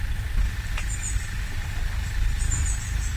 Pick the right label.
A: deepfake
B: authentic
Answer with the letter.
B